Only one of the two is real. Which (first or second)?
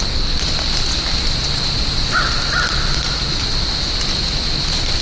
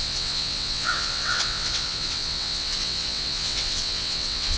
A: first